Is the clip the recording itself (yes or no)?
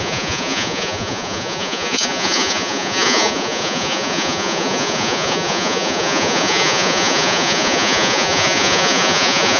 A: no